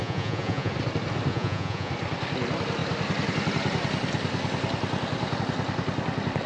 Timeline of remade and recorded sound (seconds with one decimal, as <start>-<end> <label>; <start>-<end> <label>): 0.0-0.7 remade; 0.7-1.3 recorded; 1.3-1.9 remade; 1.9-6.5 recorded